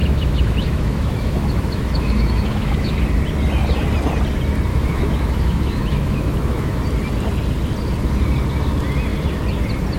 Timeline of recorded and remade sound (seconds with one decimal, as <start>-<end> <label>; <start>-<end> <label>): 0.0-3.0 remade; 3.0-4.7 recorded; 4.7-6.8 remade; 6.8-10.0 recorded

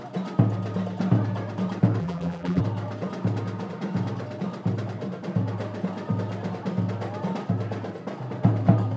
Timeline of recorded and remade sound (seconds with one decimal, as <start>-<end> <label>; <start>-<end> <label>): 0.0-2.0 recorded; 2.0-2.6 remade; 2.6-9.0 recorded

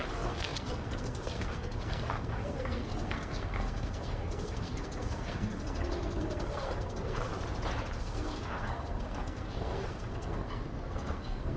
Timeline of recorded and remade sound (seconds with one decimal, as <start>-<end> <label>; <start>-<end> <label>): 0.0-7.3 remade; 7.3-8.0 recorded; 8.0-11.6 remade

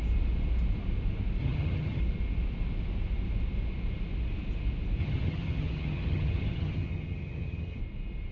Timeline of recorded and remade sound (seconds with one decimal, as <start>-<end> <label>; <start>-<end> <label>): 0.0-1.4 recorded; 1.4-2.0 remade; 2.0-5.0 recorded; 5.0-7.8 remade; 7.8-8.3 recorded

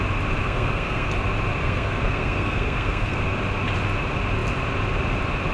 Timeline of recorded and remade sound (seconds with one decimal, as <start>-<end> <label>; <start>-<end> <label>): 0.0-0.4 recorded; 0.4-1.1 remade; 1.1-1.6 recorded; 1.6-3.2 remade; 3.2-5.5 recorded